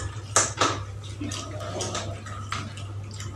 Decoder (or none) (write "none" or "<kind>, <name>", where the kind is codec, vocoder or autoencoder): none